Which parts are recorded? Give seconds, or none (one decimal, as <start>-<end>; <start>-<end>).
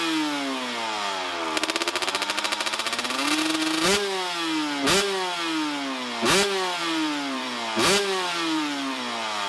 0.0-6.8